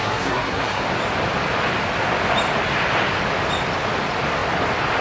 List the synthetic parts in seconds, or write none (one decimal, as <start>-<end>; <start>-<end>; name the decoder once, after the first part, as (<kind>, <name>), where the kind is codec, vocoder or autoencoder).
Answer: 0.0-0.8 (codec, SNAC)

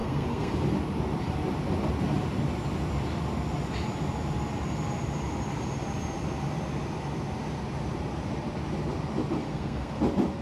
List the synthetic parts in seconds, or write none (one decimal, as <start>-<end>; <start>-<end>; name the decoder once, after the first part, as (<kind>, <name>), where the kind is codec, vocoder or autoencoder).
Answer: 0.0-0.5 (codec, SNAC); 9.4-10.0

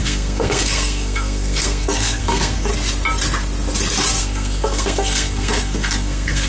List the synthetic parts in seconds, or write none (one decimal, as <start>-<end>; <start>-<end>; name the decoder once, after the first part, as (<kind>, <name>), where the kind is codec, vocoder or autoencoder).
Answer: 0.0-2.7 (codec, SNAC); 4.2-6.5

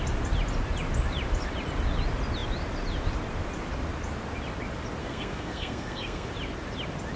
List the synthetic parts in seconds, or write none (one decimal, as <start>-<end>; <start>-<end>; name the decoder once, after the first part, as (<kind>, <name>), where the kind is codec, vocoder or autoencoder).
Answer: 5.0-6.3 (codec, SNAC)

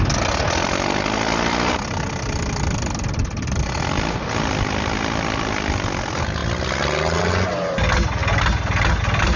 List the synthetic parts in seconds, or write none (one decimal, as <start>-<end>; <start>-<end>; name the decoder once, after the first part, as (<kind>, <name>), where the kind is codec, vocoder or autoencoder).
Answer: none